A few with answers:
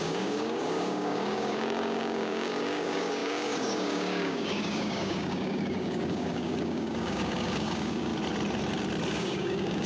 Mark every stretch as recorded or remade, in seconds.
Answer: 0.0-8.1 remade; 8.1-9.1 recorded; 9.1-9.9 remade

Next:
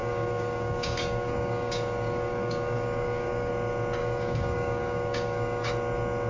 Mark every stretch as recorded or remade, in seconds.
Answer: 0.0-3.5 remade; 3.5-4.0 recorded; 4.0-5.7 remade; 5.7-6.3 recorded

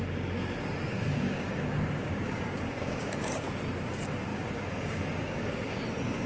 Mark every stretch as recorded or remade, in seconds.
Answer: 0.0-0.9 recorded; 0.9-3.3 remade; 3.3-4.3 recorded; 4.3-5.8 remade; 5.8-6.3 recorded

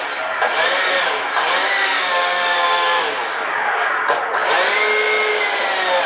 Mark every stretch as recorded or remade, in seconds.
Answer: 0.0-1.6 recorded; 1.6-3.9 remade; 3.9-6.1 recorded